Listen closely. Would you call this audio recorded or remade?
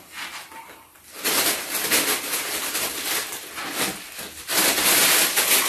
recorded